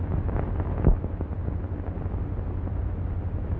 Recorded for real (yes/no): yes